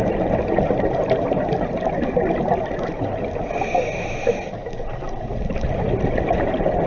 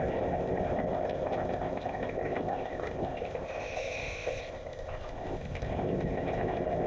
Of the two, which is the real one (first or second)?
first